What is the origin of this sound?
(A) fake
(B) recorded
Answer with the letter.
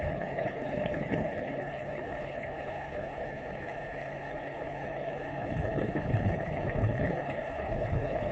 A